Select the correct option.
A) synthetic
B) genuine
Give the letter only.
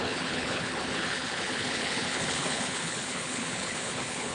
A